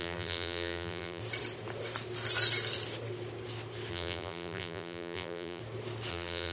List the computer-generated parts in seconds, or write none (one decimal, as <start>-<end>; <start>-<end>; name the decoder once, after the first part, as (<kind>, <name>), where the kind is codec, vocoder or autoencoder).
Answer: 0.0-1.2 (vocoder, BigVGAN v2); 3.9-5.6; 6.1-6.5